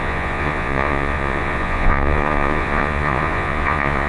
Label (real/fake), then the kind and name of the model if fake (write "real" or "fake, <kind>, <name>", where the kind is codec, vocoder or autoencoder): fake, vocoder, Vocos